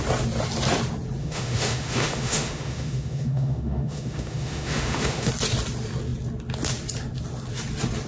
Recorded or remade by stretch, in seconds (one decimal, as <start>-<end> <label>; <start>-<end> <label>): 0.0-1.2 recorded; 1.2-5.3 remade; 5.3-8.1 recorded